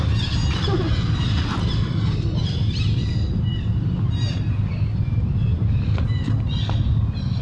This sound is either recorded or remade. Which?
recorded